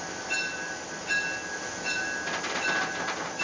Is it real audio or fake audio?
real